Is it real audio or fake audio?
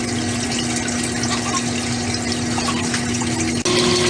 real